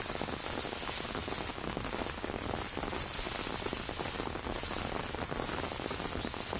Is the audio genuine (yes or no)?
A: yes